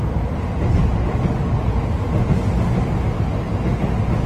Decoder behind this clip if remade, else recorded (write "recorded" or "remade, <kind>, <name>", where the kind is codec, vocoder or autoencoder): recorded